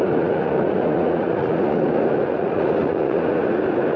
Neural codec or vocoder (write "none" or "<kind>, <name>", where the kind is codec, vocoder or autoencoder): vocoder, Vocos